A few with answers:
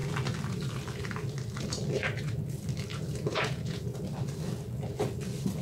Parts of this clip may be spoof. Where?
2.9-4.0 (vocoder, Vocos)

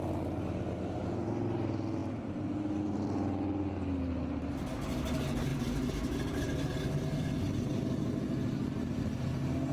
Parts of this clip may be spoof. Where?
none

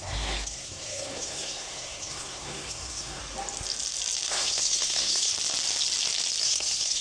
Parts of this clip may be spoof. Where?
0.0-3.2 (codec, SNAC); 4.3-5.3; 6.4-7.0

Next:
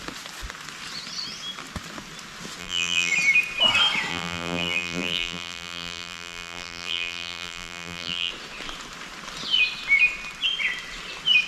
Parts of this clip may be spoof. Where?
2.6-3.1 (vocoder, BigVGAN v2); 4.1-8.3

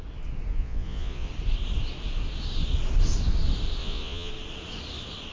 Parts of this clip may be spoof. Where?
0.5-1.3 (vocoder, Vocos); 3.8-4.3